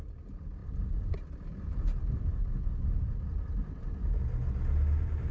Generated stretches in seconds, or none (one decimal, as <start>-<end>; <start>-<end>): 0.6-2.0

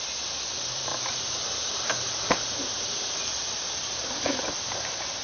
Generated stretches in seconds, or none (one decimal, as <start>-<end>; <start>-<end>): 0.0-5.2

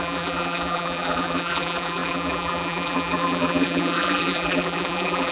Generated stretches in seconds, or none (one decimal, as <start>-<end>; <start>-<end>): 0.0-5.3